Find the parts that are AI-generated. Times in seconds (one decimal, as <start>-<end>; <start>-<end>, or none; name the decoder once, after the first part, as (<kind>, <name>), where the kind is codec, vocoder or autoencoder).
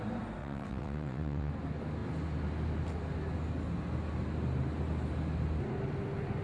0.4-1.5 (vocoder, WaveNeXt)